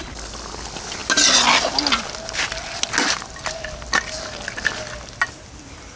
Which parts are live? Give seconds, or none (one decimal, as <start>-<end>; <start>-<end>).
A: 0.0-6.0